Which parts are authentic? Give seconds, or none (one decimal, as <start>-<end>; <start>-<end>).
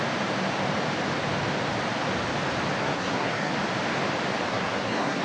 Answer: 0.0-2.8; 3.5-4.5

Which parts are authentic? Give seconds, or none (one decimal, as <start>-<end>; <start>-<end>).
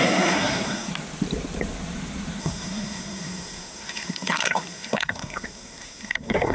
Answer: 0.9-2.4